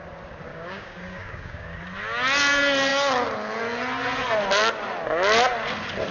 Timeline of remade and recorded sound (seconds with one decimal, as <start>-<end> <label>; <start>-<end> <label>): 0.0-0.5 recorded; 0.5-1.8 remade; 1.8-6.1 recorded